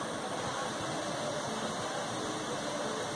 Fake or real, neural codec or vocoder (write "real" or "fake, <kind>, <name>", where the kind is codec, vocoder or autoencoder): real